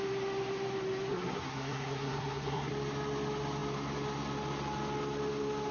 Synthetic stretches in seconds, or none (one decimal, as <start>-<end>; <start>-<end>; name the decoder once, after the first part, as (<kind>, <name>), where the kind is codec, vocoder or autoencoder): 1.1-2.7 (codec, SNAC)